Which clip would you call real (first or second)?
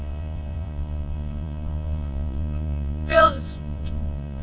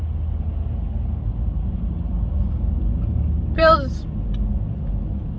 second